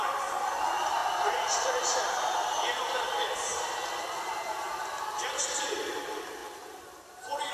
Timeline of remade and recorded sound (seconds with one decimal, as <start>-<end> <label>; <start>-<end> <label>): 0.0-1.0 remade; 1.0-4.0 recorded; 4.0-4.7 remade; 4.7-5.6 recorded; 5.6-7.5 remade